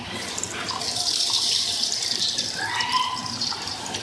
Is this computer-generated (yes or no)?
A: yes